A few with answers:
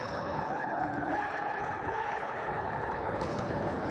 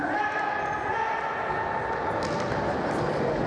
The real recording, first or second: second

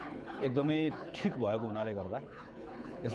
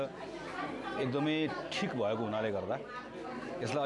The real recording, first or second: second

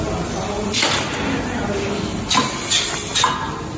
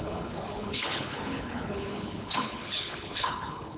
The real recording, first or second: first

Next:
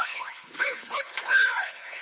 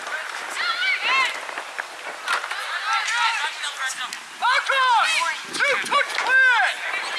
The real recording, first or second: second